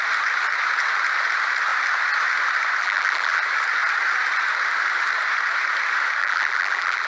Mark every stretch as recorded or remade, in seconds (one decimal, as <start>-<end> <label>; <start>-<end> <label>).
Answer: 0.0-2.8 recorded; 2.8-3.4 remade; 3.4-6.2 recorded; 6.2-7.1 remade